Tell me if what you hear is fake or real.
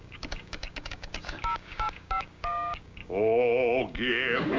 fake